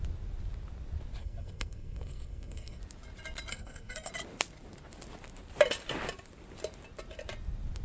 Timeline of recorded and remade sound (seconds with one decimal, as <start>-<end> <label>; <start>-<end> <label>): 0.0-1.2 recorded; 1.2-2.8 remade; 2.8-3.5 recorded; 3.5-4.1 remade; 4.1-7.8 recorded